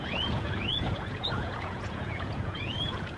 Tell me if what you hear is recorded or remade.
remade